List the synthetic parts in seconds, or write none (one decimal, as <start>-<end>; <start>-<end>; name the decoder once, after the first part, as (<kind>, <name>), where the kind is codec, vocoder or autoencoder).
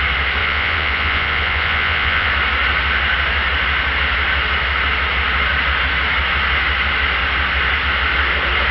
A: 0.4-2.3 (vocoder, Vocos)